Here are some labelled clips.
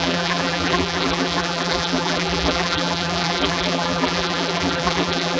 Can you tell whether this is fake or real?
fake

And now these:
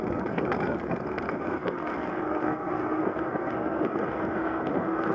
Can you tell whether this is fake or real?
fake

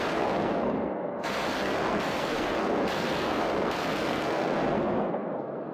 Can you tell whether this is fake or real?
fake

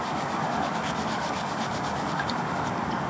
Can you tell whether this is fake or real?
fake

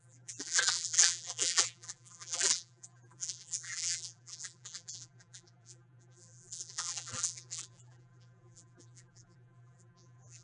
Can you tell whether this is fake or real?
fake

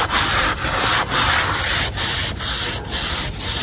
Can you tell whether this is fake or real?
fake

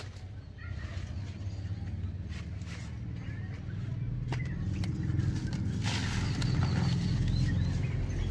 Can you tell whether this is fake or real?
real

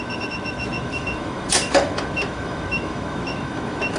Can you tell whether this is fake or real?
fake